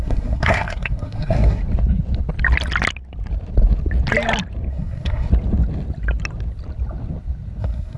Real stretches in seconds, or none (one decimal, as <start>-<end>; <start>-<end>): 1.6-4.7; 5.3-7.6